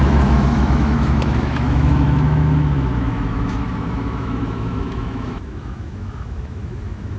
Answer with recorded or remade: remade